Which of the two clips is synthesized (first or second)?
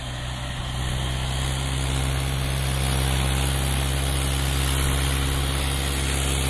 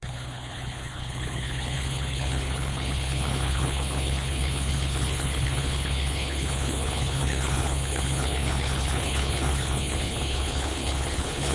second